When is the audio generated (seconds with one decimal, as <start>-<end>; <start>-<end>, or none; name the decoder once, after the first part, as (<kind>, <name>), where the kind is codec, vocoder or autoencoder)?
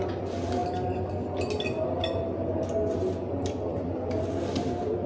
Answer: none